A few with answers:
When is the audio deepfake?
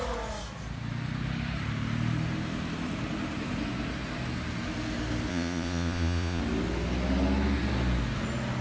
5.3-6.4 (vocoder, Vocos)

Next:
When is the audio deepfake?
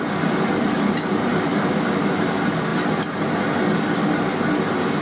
none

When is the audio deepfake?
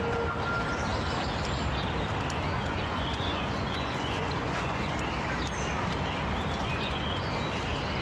2.5-4.9 (vocoder, Vocos); 6.6-7.3